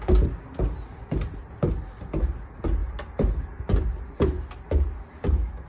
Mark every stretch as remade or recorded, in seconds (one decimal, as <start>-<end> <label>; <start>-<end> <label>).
0.0-2.8 recorded; 2.8-3.6 remade; 3.6-5.7 recorded